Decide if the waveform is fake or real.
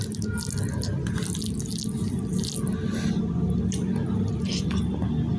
real